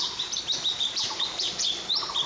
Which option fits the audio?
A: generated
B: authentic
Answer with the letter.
A